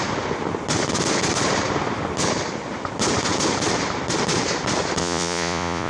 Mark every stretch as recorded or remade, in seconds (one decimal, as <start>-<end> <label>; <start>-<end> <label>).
0.0-5.0 recorded; 5.0-5.9 remade

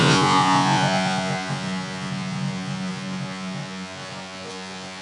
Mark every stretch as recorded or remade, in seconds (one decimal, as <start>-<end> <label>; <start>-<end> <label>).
0.0-5.0 remade

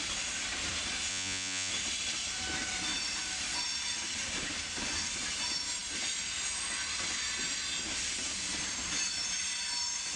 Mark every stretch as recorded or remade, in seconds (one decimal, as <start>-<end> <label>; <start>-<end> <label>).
0.0-1.1 recorded; 1.1-1.7 remade; 1.7-10.2 recorded

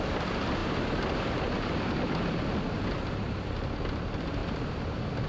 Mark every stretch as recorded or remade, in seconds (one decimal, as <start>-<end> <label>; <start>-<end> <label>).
0.0-5.3 recorded

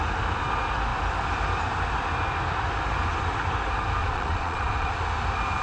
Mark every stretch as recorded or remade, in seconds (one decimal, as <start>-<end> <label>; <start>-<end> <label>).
0.0-4.0 recorded; 4.0-4.9 remade; 4.9-5.6 recorded